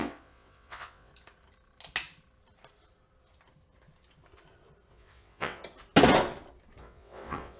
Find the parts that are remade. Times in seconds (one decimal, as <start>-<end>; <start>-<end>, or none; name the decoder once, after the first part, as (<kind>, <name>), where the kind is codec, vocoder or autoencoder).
0.0-1.1 (vocoder, WaveNeXt); 4.9-5.6; 6.8-7.6